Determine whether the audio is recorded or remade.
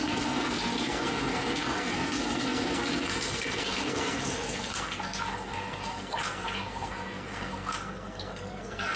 remade